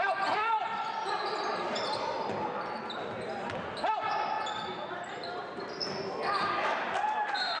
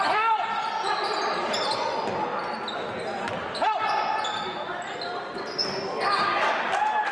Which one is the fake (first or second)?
first